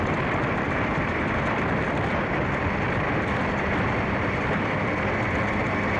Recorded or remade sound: remade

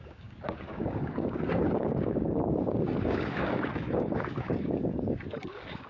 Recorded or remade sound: remade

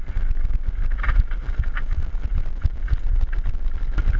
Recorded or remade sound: recorded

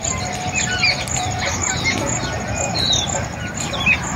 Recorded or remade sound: recorded